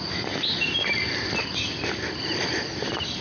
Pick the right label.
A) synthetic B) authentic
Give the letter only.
B